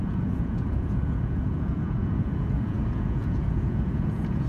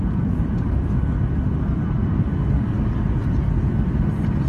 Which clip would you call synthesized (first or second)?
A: first